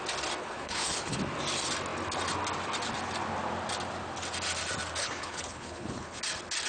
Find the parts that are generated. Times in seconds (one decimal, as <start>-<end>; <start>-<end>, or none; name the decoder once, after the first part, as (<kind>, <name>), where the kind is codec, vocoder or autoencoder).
0.4-1.2 (codec, HILCodec); 5.0-6.2